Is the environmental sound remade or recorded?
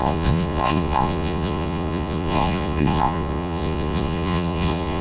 remade